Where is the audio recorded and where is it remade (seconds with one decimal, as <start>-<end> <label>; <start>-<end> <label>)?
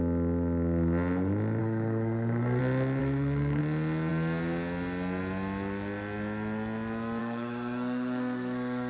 0.0-1.6 recorded; 1.6-2.6 remade; 2.6-3.0 recorded; 3.0-3.6 remade; 3.6-7.2 recorded; 7.2-8.9 remade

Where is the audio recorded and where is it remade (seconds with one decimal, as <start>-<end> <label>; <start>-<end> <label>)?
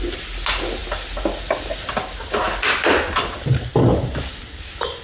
0.0-5.0 recorded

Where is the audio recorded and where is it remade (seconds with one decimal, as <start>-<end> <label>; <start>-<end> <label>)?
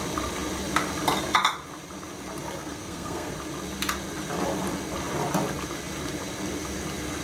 0.0-2.6 recorded; 2.6-3.3 remade; 3.3-7.2 recorded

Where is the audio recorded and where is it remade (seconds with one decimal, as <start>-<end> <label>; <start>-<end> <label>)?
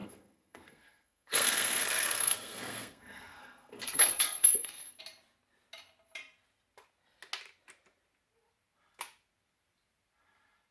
0.0-5.0 remade; 5.0-10.7 recorded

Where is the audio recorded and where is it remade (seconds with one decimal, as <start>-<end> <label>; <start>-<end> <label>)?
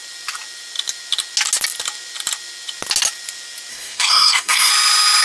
0.0-3.7 recorded; 3.7-4.7 remade; 4.7-5.2 recorded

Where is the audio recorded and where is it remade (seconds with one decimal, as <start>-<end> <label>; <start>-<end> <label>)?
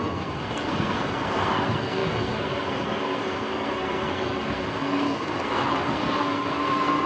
0.0-7.1 remade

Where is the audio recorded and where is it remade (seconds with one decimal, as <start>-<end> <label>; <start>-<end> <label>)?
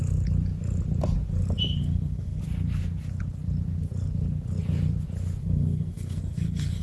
0.0-1.8 recorded; 1.8-2.4 remade; 2.4-5.4 recorded; 5.4-6.8 remade